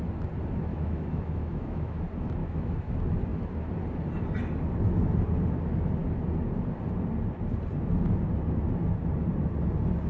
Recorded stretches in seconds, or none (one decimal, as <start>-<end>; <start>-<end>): 0.0-0.7; 2.0-2.4; 2.9-10.1